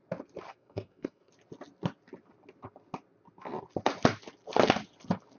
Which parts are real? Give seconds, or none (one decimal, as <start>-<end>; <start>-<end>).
0.0-0.5; 1.3-5.4